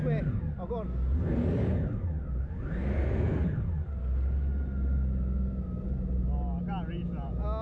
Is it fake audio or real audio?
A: real